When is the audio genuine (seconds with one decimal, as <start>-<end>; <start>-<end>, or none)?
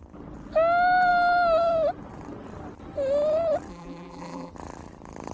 0.0-3.7; 4.5-5.3